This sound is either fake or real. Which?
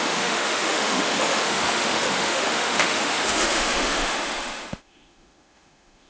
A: fake